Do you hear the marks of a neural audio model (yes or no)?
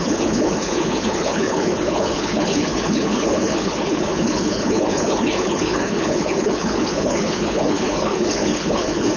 yes